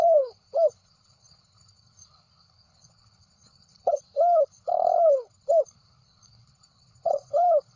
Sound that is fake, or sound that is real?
fake